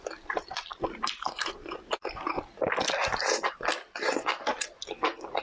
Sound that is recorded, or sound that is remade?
recorded